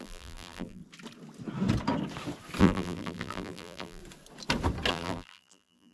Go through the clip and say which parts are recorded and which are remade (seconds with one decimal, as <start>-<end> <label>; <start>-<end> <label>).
0.0-0.8 remade; 0.8-2.6 recorded; 2.6-4.0 remade; 4.0-4.9 recorded; 4.9-5.9 remade